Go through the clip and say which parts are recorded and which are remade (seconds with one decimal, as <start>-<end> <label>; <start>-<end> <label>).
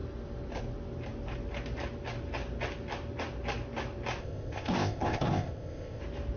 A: 0.0-4.2 recorded; 4.2-6.0 remade; 6.0-6.4 recorded